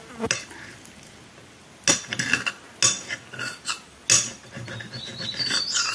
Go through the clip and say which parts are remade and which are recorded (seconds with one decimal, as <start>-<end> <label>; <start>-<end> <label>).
0.0-5.9 recorded